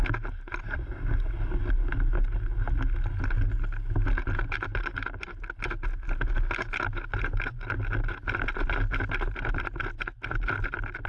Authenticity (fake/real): real